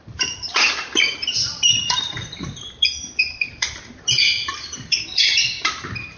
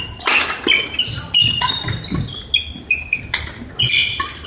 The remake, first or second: first